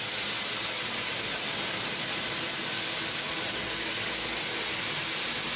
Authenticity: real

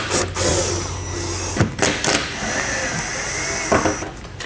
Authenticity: real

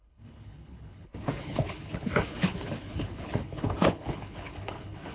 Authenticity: fake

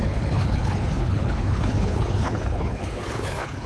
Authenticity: fake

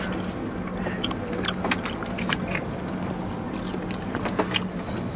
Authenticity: real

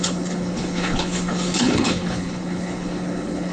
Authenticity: fake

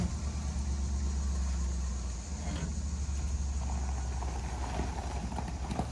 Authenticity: real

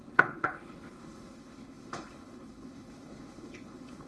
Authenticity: fake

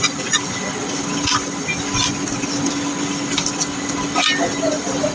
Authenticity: real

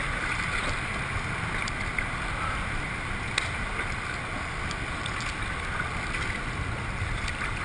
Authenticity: real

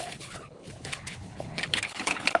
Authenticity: fake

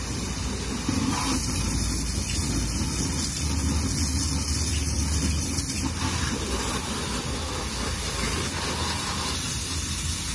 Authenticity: real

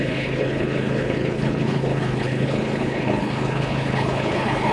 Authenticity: fake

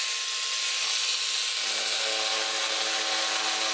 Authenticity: real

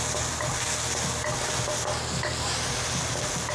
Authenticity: real